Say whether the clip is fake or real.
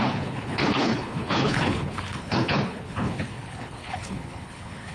fake